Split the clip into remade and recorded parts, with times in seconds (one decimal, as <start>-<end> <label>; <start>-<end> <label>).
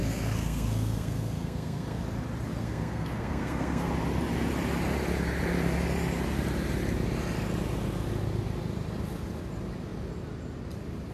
0.0-2.0 remade; 2.0-2.5 recorded; 2.5-3.9 remade; 3.9-11.1 recorded